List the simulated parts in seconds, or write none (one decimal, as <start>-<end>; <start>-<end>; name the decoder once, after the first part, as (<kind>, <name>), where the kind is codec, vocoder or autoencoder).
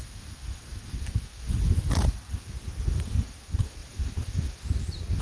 none